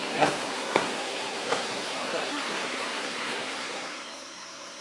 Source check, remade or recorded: remade